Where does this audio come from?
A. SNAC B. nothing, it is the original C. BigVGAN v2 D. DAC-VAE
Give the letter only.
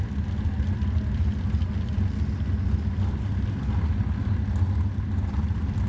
B